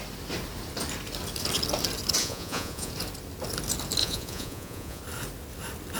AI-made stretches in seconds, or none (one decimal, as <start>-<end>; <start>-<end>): 2.2-2.9; 4.0-5.0